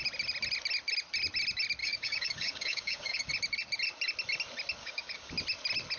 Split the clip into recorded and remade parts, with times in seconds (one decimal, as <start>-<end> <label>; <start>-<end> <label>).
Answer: 0.0-1.8 recorded; 1.8-3.3 remade; 3.3-4.8 recorded; 4.8-5.3 remade; 5.3-6.0 recorded